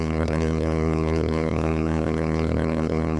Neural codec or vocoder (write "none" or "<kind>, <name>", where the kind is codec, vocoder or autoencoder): codec, SNAC